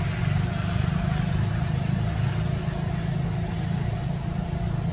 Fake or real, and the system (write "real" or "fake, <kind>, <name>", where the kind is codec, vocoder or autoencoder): real